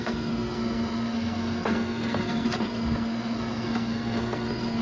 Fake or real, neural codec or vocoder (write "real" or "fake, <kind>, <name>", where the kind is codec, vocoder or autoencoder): fake, codec, SNAC